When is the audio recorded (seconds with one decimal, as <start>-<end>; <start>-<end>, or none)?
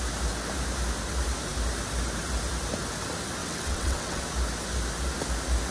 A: 0.0-3.4; 4.2-5.7